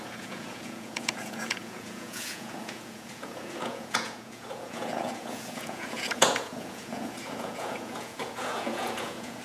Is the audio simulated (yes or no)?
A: yes